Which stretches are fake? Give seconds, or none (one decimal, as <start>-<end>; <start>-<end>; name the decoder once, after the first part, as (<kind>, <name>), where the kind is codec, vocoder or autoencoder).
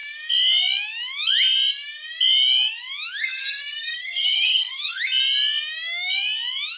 3.2-5.0 (codec, SNAC)